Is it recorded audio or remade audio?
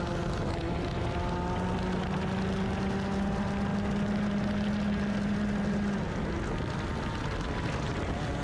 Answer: recorded